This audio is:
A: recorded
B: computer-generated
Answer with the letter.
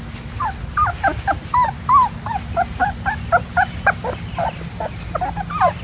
A